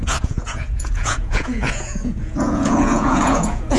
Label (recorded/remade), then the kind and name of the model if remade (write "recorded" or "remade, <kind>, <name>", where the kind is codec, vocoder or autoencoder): remade, vocoder, Vocos